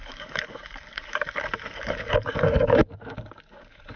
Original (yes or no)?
no